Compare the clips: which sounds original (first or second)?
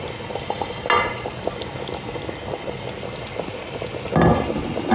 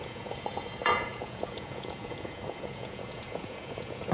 first